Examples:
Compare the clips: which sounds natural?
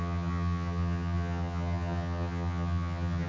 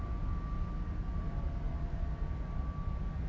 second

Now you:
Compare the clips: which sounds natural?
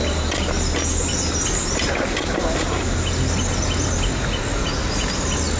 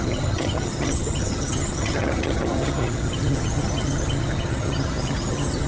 first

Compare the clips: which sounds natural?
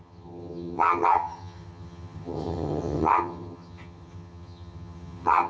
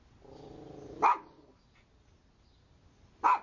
second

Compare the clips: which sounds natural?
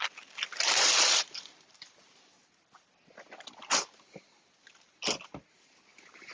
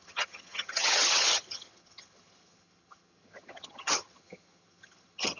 first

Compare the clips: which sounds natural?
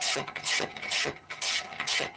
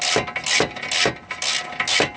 second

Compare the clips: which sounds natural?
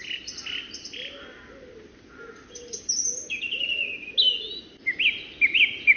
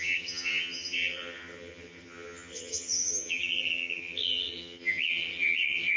first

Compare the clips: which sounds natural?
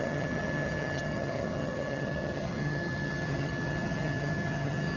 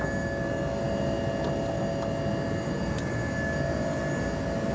second